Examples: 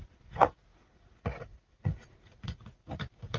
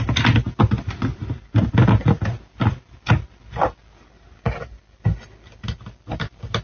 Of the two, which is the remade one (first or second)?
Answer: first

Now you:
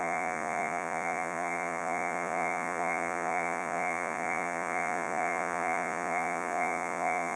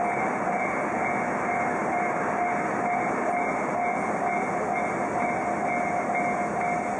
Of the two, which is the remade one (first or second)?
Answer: first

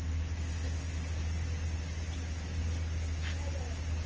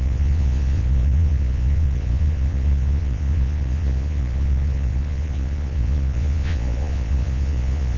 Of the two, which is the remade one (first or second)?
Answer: second